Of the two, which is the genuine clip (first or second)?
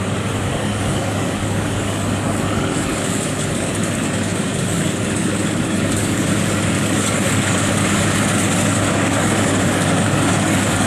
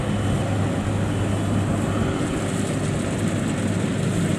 second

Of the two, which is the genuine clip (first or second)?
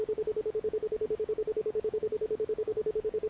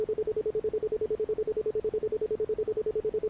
second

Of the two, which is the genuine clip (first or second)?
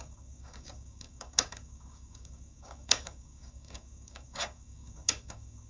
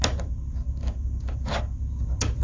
second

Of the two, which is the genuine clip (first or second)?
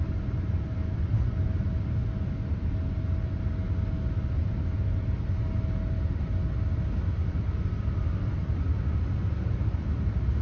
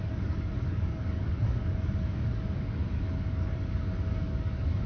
first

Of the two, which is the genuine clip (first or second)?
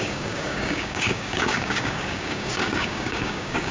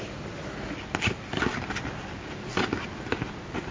second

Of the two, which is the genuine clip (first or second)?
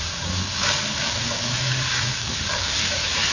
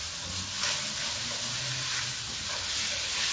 second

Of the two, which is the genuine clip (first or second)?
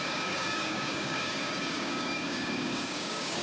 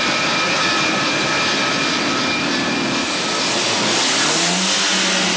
second